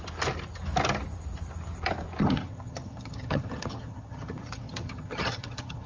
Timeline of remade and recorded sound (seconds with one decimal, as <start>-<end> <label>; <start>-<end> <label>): 0.0-2.2 recorded; 2.2-5.9 remade